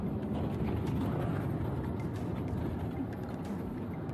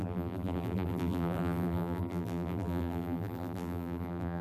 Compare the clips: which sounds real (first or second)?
first